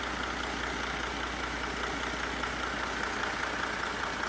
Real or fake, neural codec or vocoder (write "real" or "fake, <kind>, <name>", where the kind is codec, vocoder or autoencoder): real